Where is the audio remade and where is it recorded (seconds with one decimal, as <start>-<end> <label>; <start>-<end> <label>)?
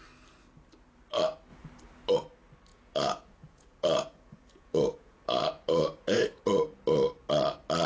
0.0-2.7 recorded; 2.7-6.4 remade; 6.4-7.9 recorded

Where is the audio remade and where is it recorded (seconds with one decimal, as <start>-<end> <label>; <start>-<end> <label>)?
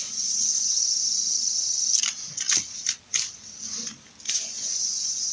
0.0-1.3 remade; 1.3-4.3 recorded; 4.3-5.3 remade